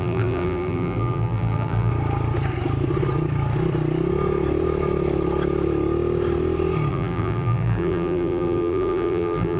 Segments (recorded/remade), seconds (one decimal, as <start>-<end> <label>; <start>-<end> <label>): 0.0-1.9 remade; 1.9-6.9 recorded; 6.9-9.6 remade